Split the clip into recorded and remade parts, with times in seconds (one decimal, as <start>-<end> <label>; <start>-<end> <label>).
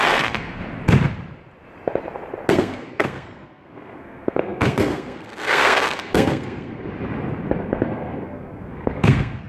0.0-0.6 remade; 0.6-2.5 recorded; 2.5-6.9 remade; 6.9-7.6 recorded; 7.6-9.5 remade